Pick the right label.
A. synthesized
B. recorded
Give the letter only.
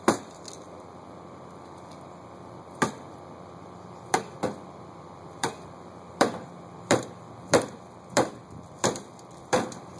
A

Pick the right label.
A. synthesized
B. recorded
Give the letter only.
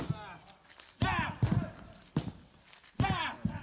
B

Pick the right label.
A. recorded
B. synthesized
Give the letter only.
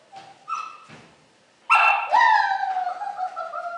A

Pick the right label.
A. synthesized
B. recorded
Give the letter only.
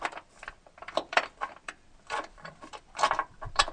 A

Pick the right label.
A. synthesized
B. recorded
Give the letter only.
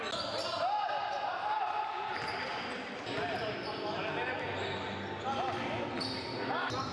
B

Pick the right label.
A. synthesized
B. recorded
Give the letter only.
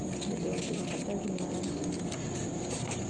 B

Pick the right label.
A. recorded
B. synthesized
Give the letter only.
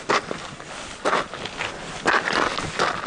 A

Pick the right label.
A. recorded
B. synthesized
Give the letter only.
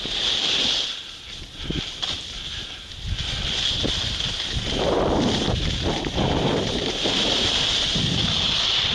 A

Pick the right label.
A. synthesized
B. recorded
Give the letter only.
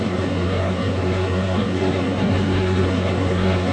A